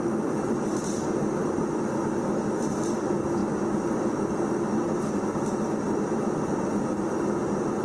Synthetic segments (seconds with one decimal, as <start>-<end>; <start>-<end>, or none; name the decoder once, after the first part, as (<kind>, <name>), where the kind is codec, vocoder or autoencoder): none